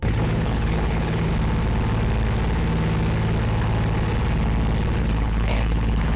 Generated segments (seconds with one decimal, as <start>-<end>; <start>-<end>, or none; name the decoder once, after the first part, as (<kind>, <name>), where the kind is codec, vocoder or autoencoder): 0.0-1.3 (codec, HILCodec); 5.0-6.2

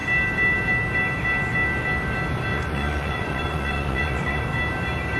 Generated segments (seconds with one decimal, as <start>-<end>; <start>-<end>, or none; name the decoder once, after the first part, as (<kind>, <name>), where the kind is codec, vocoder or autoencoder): 2.5-4.4 (vocoder, Vocos)

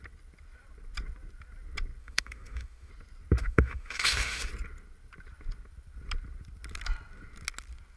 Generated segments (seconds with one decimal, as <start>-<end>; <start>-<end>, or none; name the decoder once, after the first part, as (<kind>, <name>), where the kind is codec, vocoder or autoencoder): 2.0-2.9 (autoencoder, DAC-VAE); 3.4-4.5

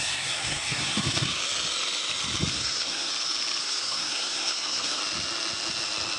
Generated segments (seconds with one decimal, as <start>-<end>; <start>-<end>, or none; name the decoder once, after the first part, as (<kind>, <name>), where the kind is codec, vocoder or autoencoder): 0.0-1.4 (codec, SNAC); 2.5-3.1; 3.6-5.0